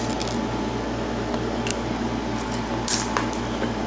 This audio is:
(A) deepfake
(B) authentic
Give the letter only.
B